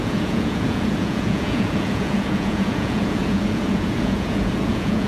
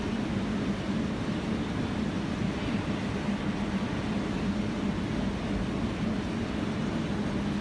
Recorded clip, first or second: second